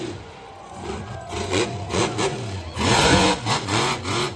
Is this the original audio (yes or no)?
no